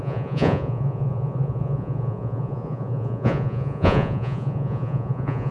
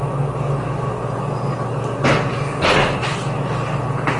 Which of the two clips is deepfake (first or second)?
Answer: first